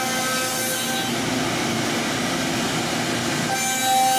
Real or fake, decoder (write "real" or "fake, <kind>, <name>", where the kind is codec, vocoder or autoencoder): real